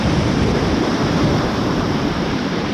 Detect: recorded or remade remade